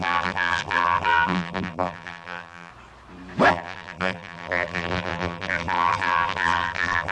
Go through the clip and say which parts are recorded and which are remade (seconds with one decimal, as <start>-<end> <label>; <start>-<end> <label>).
0.0-2.7 remade; 2.7-3.5 recorded; 3.5-7.1 remade